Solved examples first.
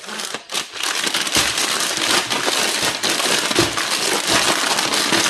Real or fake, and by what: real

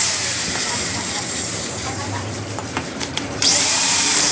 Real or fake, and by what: fake, vocoder, BigVGAN v2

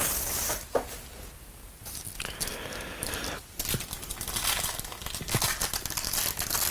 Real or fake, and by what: real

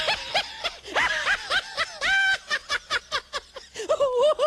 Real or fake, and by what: real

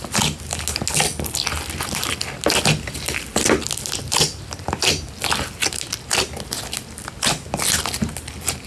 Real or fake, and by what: real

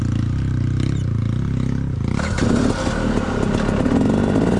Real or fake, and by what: real